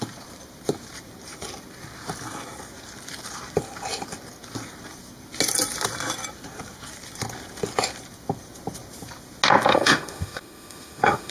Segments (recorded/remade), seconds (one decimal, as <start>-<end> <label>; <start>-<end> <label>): 0.0-9.7 recorded; 9.7-11.3 remade